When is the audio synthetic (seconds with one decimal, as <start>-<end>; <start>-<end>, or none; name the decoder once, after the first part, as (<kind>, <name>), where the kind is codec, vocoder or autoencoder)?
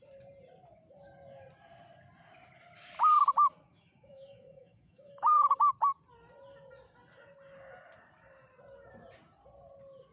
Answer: 3.7-5.6 (autoencoder, DAC-VAE)